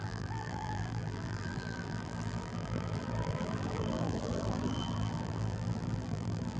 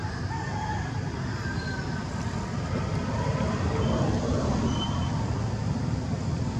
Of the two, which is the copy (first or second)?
first